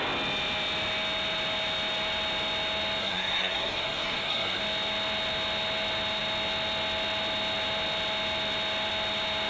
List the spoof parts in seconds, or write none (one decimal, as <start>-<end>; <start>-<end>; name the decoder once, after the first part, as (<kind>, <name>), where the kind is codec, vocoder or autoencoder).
3.0-4.6 (codec, SNAC)